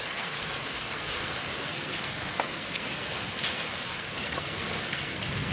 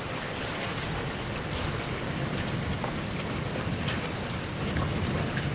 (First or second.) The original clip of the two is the second